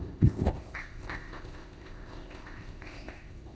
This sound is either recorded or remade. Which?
remade